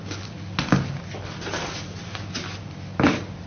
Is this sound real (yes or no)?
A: yes